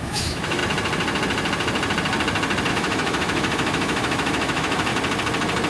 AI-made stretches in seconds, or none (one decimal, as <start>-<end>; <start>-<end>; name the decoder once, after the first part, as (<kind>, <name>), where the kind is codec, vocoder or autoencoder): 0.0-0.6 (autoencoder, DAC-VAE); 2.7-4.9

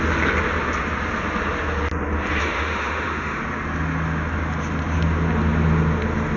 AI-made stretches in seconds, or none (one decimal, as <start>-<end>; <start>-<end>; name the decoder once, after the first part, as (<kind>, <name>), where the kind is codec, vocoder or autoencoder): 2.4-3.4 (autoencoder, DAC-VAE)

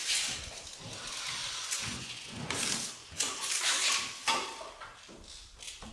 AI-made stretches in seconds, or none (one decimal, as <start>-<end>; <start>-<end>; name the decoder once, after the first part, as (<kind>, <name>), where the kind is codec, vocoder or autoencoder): 1.4-2.6 (vocoder, Vocos); 3.0-3.5

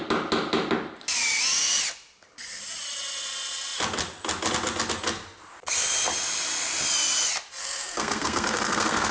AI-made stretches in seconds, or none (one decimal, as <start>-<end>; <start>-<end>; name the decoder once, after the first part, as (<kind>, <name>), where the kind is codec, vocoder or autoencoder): 7.6-9.1 (codec, SNAC)